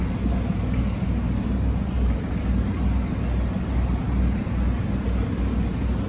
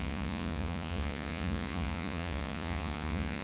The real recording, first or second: first